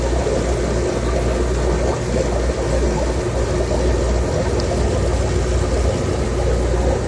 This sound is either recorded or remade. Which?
recorded